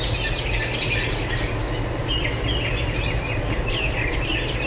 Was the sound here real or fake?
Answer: real